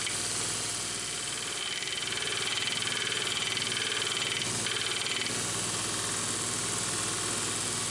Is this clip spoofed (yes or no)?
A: no